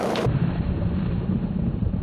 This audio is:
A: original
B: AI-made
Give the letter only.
B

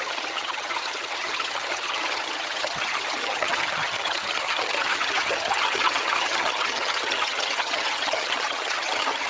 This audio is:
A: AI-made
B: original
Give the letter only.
A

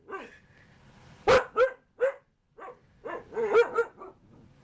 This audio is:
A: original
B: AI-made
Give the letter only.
A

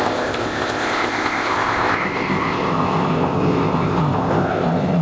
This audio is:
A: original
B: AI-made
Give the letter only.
B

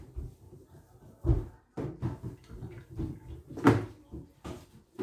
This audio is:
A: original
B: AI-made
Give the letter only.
A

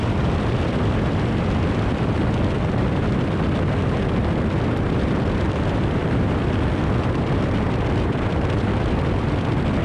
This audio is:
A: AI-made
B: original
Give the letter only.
A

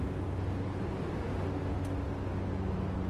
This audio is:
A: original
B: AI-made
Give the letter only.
A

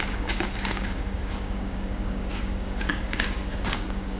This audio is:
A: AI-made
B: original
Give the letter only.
A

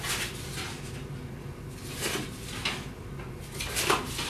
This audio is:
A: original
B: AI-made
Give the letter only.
A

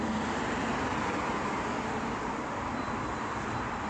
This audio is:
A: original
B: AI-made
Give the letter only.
B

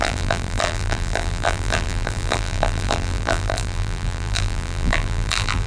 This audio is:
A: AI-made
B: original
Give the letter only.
A